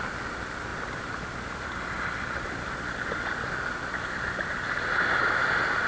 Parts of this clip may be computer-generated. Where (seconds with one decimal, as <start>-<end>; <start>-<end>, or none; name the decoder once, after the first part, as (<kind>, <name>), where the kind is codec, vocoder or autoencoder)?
0.7-3.6 (vocoder, BigVGAN v2)